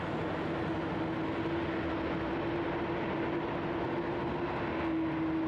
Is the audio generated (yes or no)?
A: no